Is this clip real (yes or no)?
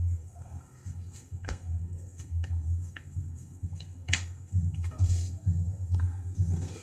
no